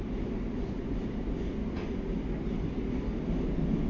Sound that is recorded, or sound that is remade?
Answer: recorded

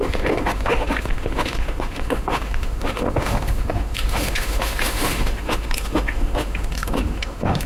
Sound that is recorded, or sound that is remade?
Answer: remade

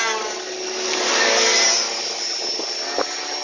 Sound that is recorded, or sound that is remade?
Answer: recorded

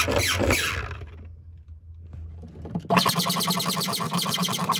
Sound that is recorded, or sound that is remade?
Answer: recorded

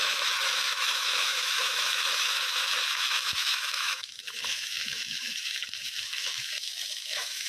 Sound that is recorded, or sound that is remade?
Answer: remade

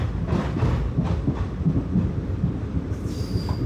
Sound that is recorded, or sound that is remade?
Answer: recorded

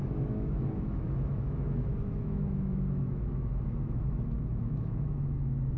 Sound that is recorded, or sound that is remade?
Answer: remade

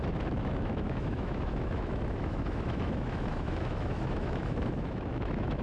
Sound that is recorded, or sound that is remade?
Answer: remade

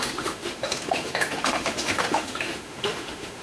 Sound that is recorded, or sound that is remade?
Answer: remade